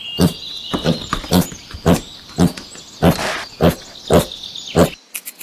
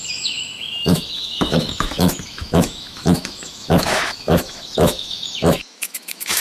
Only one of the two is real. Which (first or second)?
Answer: first